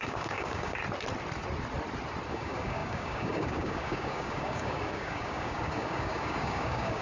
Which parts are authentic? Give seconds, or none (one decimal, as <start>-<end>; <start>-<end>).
0.8-2.3